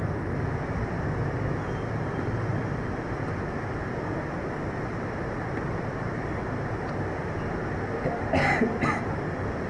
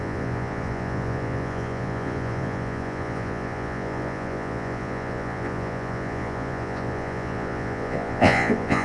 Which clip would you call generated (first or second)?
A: second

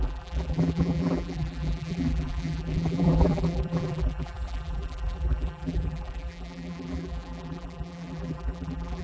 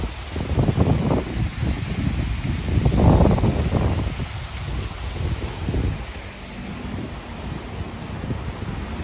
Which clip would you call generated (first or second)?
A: first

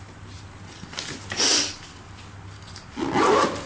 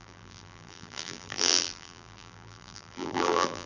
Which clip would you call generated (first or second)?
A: second